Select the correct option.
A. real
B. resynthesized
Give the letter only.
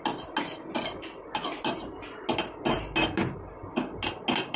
A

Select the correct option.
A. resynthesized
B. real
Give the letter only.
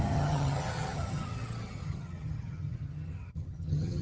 A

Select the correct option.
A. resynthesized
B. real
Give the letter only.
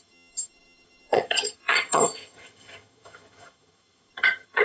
A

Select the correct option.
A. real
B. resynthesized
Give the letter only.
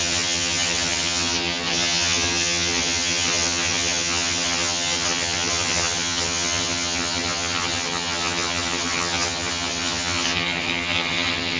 B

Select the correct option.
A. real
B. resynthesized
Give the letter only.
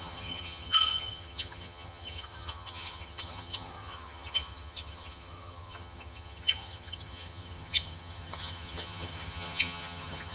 B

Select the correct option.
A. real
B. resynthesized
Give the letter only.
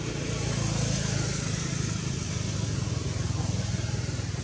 A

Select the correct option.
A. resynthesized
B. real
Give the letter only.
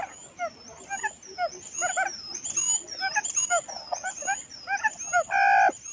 B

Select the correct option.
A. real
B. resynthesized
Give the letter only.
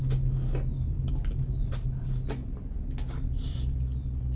A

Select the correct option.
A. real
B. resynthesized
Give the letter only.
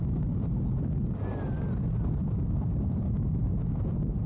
A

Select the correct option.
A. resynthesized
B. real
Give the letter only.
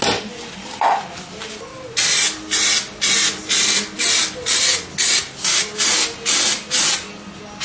B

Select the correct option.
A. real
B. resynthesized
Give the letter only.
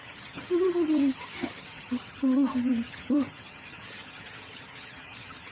B